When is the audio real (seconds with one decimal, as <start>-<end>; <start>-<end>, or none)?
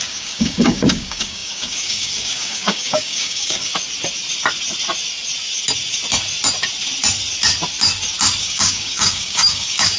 3.7-8.4